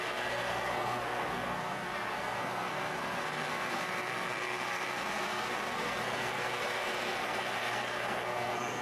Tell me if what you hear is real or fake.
fake